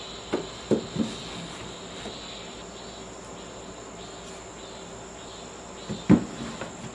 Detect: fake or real real